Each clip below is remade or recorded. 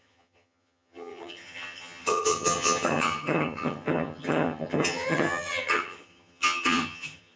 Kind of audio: remade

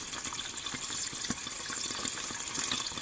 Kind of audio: remade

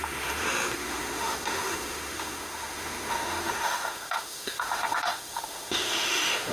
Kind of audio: remade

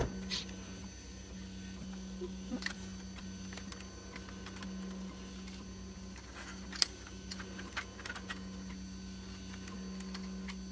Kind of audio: recorded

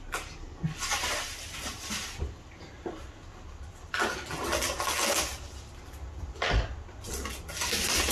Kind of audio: recorded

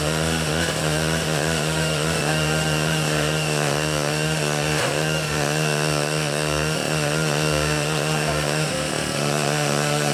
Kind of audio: remade